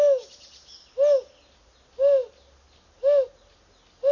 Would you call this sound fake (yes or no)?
no